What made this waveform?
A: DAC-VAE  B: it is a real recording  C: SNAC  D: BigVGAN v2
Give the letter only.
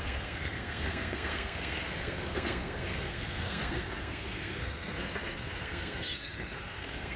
C